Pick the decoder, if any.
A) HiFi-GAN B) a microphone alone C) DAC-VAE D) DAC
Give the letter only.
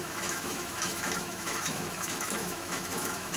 C